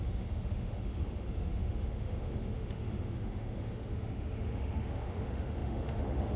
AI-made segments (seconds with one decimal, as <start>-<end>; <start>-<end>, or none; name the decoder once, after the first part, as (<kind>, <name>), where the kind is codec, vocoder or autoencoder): 0.0-6.4 (autoencoder, DAC-VAE)